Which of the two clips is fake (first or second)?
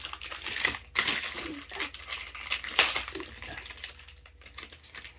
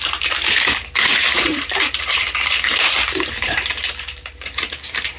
second